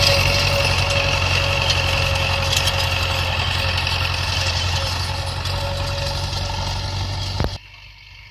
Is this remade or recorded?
recorded